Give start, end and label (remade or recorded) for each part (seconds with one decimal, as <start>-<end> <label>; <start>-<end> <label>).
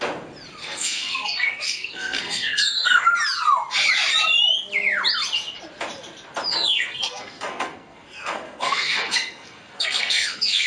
0.0-0.6 recorded; 0.6-3.1 remade; 3.1-6.5 recorded; 6.5-10.7 remade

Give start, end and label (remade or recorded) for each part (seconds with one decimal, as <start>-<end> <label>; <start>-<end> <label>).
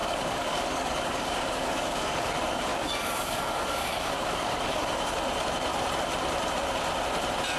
0.0-2.3 remade; 2.3-2.7 recorded; 2.7-5.0 remade; 5.0-7.6 recorded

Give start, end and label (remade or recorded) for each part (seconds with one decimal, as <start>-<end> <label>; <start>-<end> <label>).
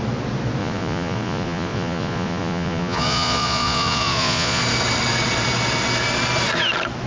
0.0-0.6 recorded; 0.6-4.6 remade; 4.6-7.1 recorded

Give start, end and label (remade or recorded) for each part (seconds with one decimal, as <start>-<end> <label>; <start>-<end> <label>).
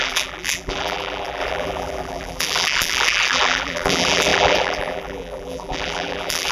0.0-6.5 remade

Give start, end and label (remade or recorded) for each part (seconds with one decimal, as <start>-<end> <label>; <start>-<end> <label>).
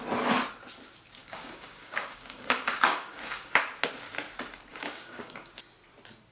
0.0-1.2 recorded; 1.2-3.5 remade; 3.5-4.7 recorded; 4.7-5.5 remade; 5.5-6.3 recorded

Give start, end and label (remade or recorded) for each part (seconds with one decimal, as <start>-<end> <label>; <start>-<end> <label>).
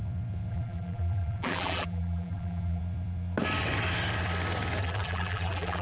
0.0-0.5 recorded; 0.5-2.8 remade; 2.8-4.8 recorded; 4.8-5.8 remade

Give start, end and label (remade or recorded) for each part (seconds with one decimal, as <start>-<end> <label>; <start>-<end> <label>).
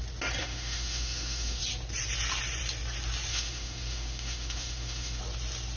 0.0-0.4 recorded; 0.4-1.6 remade; 1.6-3.3 recorded; 3.3-5.2 remade; 5.2-5.8 recorded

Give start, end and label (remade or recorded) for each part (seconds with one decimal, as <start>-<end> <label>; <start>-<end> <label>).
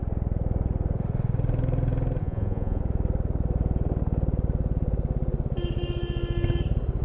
0.0-2.2 recorded; 2.2-2.8 remade; 2.8-7.0 recorded